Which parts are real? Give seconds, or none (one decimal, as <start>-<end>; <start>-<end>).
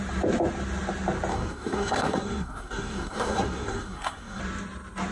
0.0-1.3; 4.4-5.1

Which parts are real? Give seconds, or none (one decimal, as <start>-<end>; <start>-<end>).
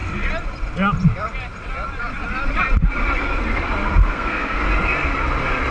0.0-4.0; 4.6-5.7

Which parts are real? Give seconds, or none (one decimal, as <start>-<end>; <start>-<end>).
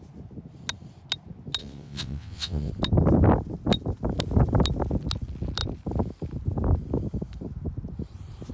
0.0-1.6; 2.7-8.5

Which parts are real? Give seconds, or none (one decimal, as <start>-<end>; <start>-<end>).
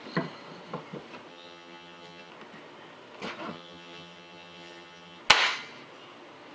0.0-1.3; 2.3-3.5; 5.2-6.5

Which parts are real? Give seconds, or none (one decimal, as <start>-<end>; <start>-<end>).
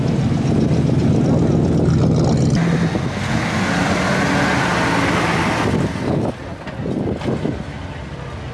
0.0-8.5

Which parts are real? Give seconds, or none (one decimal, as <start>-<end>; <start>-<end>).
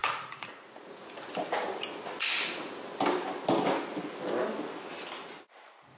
1.3-6.0